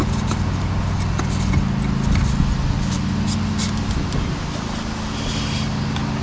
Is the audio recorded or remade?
recorded